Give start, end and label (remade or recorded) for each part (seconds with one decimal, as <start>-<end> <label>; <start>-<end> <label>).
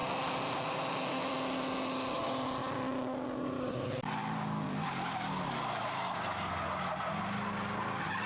0.0-8.3 recorded